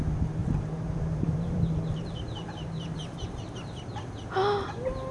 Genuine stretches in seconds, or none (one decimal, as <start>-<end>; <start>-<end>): 0.0-0.4; 3.5-5.1